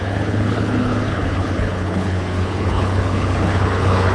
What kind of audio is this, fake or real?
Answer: fake